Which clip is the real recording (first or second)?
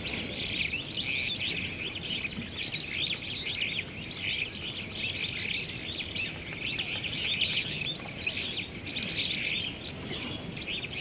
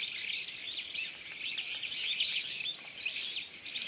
first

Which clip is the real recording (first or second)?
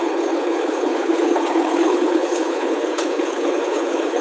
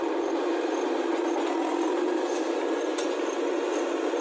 second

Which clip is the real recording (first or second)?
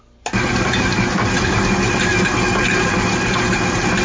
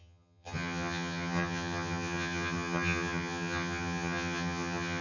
first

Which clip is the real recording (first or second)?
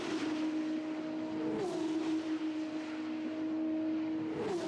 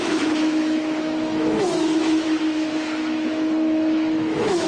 first